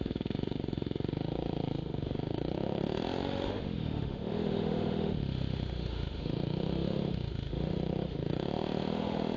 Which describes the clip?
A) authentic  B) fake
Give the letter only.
B